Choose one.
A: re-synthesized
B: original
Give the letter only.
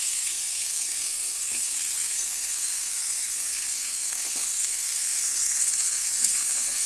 A